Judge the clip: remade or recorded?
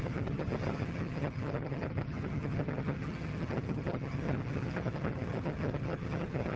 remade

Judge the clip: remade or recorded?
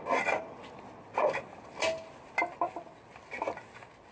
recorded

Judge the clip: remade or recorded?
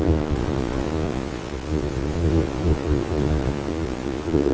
remade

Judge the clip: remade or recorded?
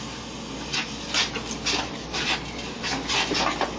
recorded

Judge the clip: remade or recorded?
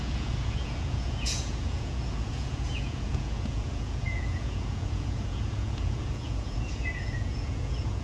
remade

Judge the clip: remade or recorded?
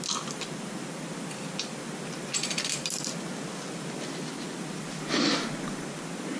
recorded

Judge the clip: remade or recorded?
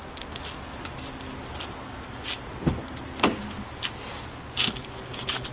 recorded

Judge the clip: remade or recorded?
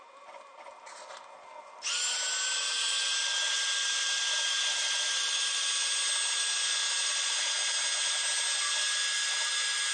recorded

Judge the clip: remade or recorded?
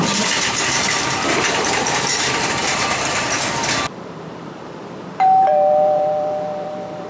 remade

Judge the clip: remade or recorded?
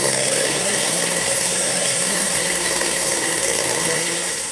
remade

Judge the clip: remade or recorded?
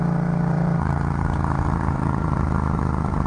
remade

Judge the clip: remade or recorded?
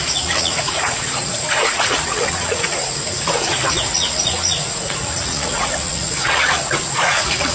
remade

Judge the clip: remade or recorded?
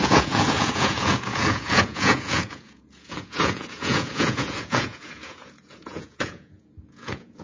remade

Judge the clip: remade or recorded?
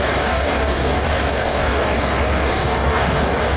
remade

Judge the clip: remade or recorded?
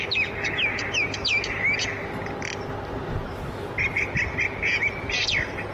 recorded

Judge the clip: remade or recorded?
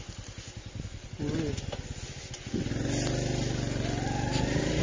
recorded